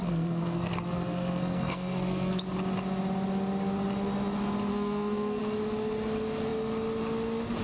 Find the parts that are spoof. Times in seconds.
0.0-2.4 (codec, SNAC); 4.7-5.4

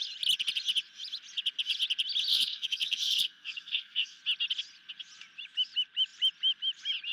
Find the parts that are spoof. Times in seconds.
2.3-4.2 (codec, SNAC)

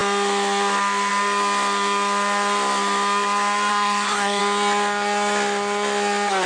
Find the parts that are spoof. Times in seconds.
3.7-4.4 (codec, SNAC)

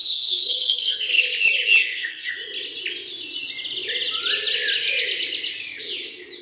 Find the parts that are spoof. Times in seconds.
0.0-1.2 (codec, SNAC); 1.8-2.3

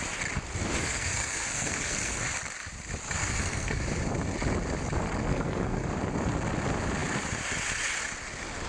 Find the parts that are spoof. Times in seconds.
0.8-2.2 (codec, SNAC); 3.2-3.8; 5.3-6.0

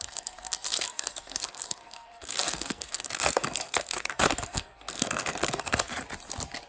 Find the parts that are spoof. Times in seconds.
0.0-5.9 (codec, SNAC)